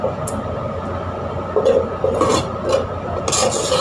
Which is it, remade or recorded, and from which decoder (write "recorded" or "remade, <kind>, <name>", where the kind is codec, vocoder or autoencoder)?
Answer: recorded